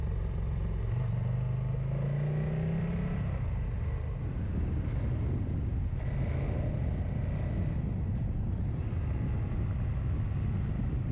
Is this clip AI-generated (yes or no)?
no